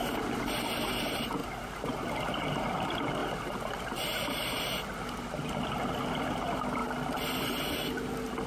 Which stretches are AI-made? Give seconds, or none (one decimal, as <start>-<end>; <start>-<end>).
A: 3.2-4.6